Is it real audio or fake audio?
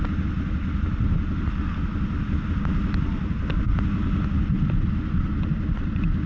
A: real